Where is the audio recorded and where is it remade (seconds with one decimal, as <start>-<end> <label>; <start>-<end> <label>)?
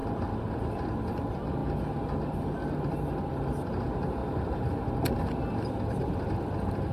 0.0-6.9 recorded